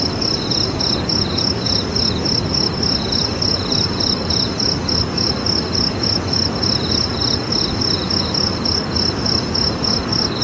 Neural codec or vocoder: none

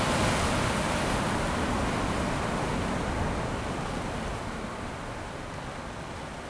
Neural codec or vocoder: none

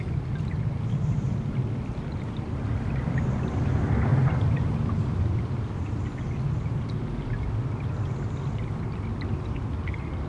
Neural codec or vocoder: none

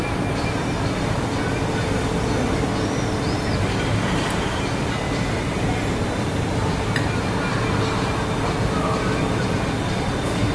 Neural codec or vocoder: none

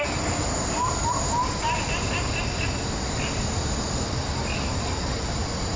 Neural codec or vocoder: none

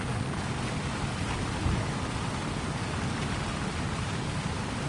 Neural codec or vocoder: none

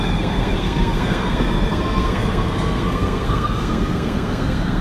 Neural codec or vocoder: codec, SNAC